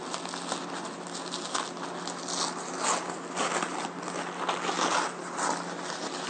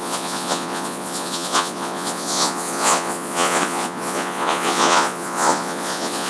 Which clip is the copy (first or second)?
second